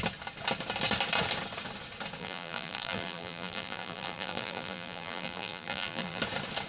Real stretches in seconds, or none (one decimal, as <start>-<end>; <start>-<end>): 0.0-2.2; 6.2-6.7